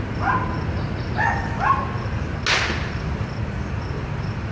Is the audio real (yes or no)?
yes